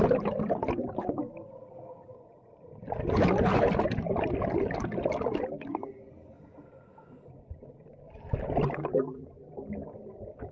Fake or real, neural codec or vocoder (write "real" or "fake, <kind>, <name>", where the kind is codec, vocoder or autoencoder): real